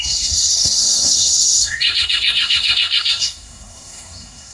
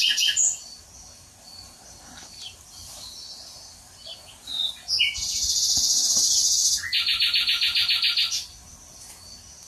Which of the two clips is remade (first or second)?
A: first